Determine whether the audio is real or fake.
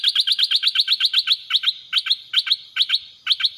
real